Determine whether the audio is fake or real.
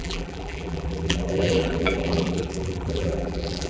fake